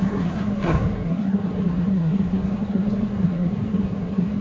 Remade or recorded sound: remade